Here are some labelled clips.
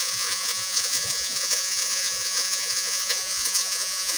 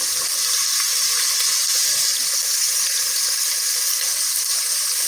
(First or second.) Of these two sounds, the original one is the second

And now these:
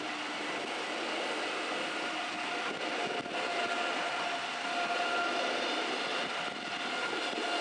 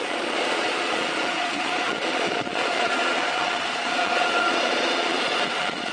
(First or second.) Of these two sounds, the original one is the first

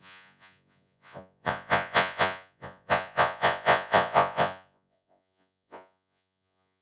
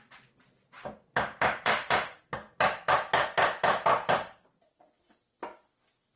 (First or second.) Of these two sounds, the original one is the second